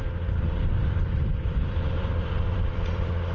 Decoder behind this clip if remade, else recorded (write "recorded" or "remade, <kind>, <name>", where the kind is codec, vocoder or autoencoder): remade, vocoder, BigVGAN v2